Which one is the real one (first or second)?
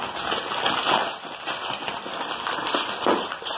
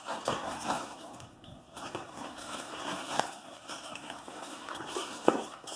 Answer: first